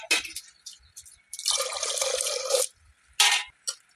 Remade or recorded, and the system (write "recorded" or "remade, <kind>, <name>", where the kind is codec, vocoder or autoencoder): recorded